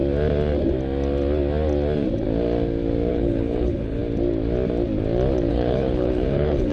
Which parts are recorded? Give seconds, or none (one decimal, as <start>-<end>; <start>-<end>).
0.0-3.1; 4.0-5.5